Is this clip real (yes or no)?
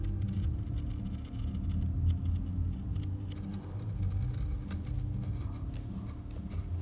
yes